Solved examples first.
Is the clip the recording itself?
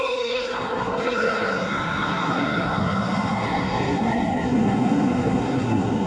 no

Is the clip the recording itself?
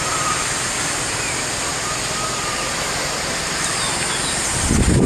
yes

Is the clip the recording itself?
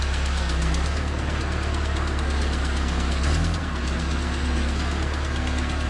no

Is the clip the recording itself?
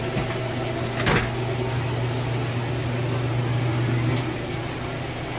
yes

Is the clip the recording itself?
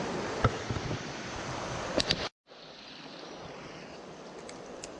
no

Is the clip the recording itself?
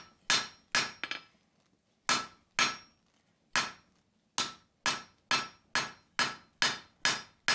yes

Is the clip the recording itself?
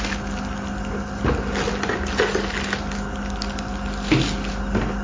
yes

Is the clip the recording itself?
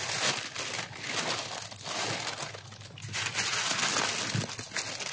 yes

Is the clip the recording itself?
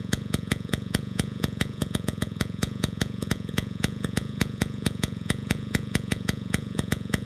no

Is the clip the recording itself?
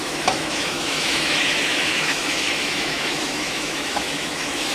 no